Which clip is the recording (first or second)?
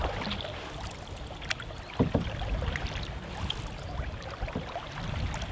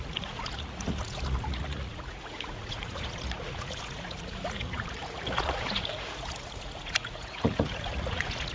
first